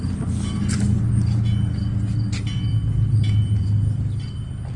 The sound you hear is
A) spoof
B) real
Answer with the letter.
B